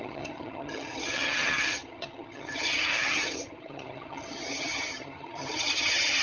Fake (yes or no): yes